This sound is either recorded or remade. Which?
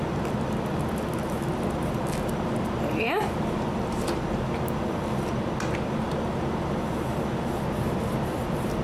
recorded